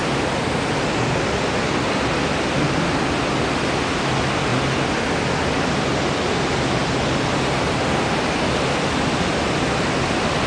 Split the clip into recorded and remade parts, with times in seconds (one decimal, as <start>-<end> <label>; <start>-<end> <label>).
0.0-10.5 recorded